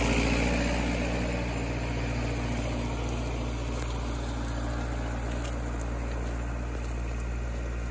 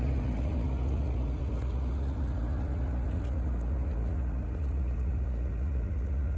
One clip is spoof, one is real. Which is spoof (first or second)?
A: second